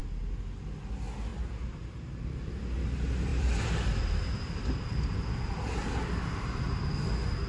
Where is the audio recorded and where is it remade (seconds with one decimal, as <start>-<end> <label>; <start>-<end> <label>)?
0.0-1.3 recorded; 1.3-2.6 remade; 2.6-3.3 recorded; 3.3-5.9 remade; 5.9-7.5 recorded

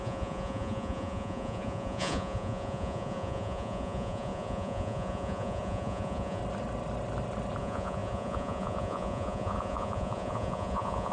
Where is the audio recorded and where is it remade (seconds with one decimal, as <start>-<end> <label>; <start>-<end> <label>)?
0.0-6.4 remade; 6.4-7.6 recorded; 7.6-11.1 remade

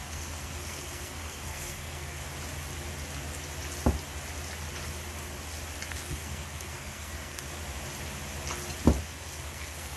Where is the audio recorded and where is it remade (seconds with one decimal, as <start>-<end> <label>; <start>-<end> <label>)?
0.0-2.2 remade; 2.2-5.9 recorded; 5.9-7.5 remade; 7.5-9.0 recorded; 9.0-10.0 remade

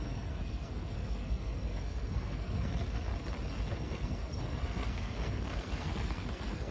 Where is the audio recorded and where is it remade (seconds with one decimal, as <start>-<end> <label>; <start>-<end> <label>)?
0.0-3.1 remade; 3.1-3.7 recorded; 3.7-6.7 remade

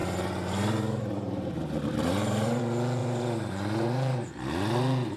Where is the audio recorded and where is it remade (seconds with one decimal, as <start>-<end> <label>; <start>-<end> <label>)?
0.0-2.6 remade; 2.6-3.0 recorded; 3.0-4.4 remade; 4.4-5.2 recorded

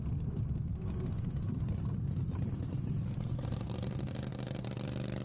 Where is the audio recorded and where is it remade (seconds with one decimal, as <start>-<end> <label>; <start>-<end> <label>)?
0.0-5.2 recorded

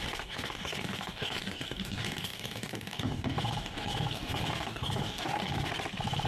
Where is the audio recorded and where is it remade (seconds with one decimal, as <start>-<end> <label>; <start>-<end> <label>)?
0.0-5.7 remade; 5.7-6.3 recorded

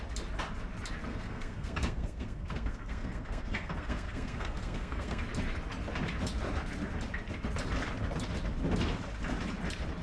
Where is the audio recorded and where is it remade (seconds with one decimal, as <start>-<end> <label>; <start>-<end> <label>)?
0.0-1.1 recorded; 1.1-5.2 remade; 5.2-10.0 recorded